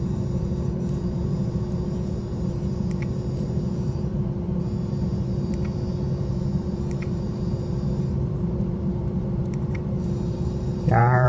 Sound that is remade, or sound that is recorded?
remade